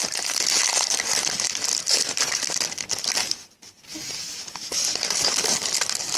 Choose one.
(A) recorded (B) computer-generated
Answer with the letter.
A